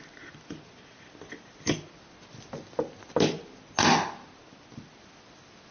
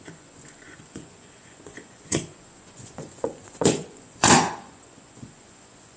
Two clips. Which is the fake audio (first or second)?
second